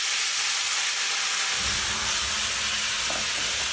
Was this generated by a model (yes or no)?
no